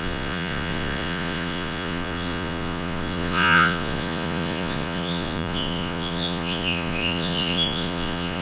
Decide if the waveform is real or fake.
fake